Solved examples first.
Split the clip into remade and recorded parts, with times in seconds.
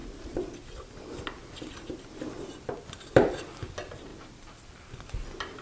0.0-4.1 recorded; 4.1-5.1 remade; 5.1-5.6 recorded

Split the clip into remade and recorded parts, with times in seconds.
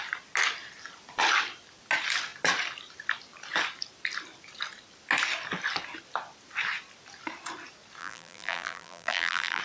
0.0-8.0 recorded; 8.0-9.6 remade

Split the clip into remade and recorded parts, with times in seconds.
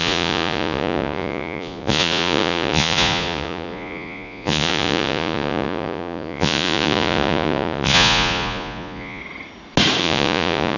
0.0-9.2 remade; 9.2-10.0 recorded; 10.0-10.8 remade